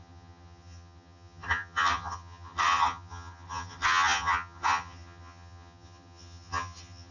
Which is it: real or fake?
fake